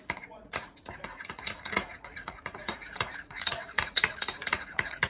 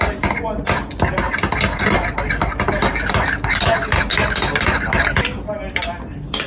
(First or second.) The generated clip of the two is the first